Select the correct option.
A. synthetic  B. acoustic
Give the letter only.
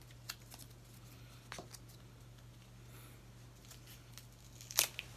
B